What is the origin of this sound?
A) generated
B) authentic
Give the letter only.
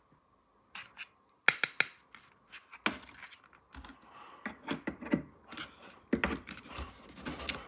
B